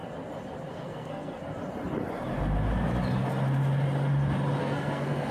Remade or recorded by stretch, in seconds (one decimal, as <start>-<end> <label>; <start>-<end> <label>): 0.0-0.7 recorded; 0.7-1.4 remade; 1.4-4.6 recorded; 4.6-5.3 remade